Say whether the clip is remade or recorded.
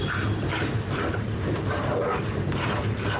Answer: remade